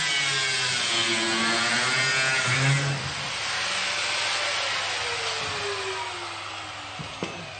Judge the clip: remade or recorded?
recorded